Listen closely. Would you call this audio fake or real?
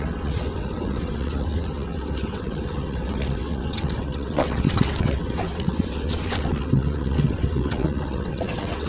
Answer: fake